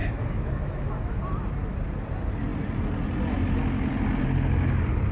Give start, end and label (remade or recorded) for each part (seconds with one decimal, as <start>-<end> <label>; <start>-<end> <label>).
0.0-1.2 remade; 1.2-5.1 recorded